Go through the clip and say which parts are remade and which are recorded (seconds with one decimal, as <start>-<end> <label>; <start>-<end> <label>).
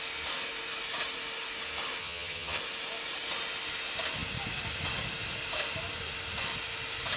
0.0-2.0 recorded; 2.0-2.6 remade; 2.6-7.2 recorded